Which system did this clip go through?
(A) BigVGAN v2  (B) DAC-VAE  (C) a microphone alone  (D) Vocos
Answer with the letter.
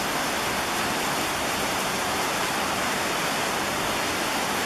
A